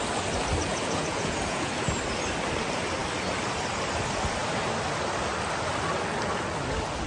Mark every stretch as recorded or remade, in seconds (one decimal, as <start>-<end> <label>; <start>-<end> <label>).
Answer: 0.0-0.7 recorded; 0.7-1.7 remade; 1.7-7.1 recorded